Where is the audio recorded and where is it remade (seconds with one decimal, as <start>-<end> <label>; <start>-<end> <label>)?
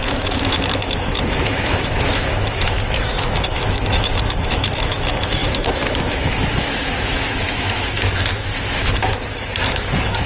0.0-10.3 remade